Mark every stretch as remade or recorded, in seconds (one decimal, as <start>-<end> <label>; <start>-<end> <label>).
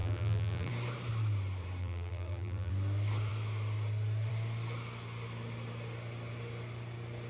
0.0-0.7 remade; 0.7-1.8 recorded; 1.8-2.7 remade; 2.7-7.3 recorded